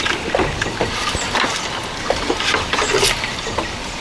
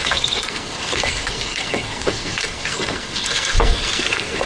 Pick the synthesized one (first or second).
second